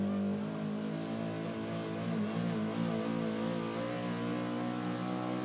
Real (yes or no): yes